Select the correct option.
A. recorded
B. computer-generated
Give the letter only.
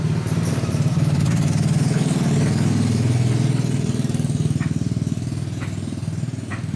A